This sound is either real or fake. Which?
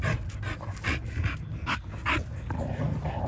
real